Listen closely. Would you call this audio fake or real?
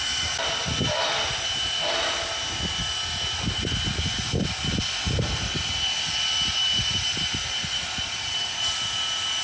real